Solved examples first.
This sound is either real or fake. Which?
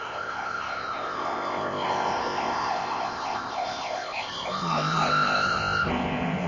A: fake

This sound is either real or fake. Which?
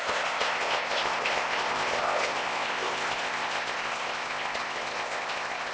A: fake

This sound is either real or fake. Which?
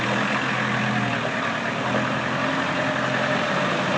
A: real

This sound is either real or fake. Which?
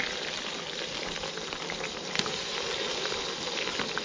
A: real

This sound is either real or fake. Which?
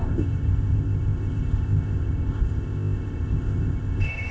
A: fake